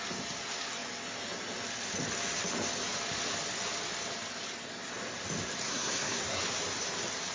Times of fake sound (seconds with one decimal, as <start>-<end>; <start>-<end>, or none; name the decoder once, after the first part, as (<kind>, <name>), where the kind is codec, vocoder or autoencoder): 5.6-6.4 (codec, SNAC)